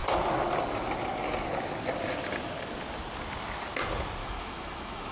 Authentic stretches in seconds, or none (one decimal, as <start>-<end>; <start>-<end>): 0.0-4.2